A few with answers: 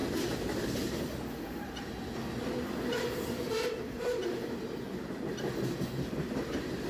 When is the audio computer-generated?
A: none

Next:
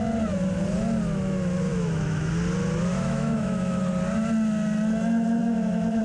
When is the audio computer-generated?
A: 1.7-2.3 (autoencoder, DAC-VAE); 2.9-3.8; 5.4-6.0

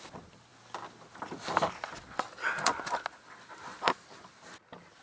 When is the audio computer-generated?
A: none

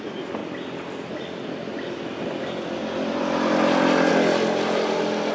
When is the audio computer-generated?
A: none

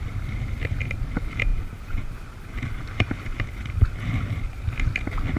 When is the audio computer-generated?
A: 1.5-2.1 (vocoder, Vocos)